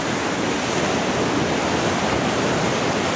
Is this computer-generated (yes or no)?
no